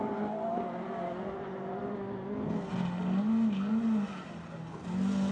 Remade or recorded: recorded